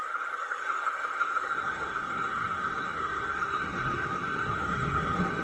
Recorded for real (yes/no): no